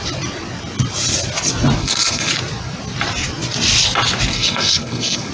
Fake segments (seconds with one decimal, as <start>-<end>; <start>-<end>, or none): 1.8-2.3; 4.3-5.3